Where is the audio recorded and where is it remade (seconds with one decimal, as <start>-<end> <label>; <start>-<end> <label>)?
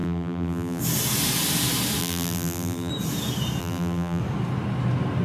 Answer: 0.0-0.8 remade; 0.8-2.0 recorded; 2.0-2.9 remade; 2.9-3.6 recorded; 3.6-4.2 remade; 4.2-5.2 recorded